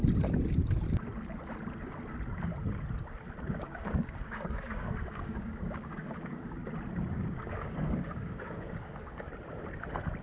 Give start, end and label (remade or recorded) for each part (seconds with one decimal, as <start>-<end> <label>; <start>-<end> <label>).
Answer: 0.0-3.5 recorded; 3.5-6.6 remade; 6.6-7.1 recorded; 7.1-9.3 remade; 9.3-10.2 recorded